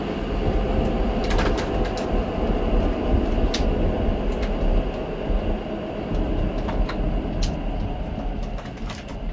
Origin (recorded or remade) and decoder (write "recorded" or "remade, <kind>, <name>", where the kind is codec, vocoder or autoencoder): recorded